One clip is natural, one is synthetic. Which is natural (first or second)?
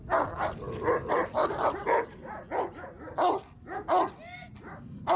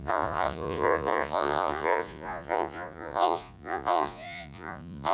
first